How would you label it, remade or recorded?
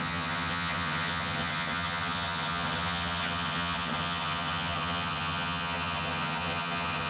remade